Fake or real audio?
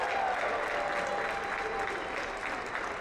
real